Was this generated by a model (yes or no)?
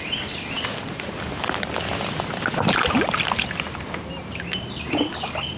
no